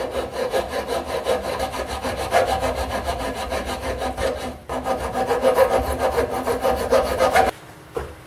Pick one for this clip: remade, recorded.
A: recorded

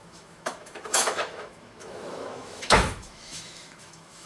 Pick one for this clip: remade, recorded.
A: remade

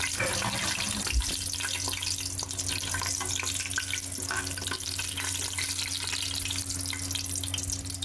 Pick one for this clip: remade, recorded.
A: recorded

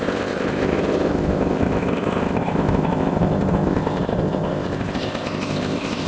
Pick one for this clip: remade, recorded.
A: remade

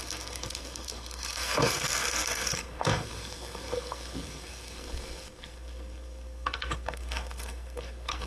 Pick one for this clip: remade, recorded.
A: remade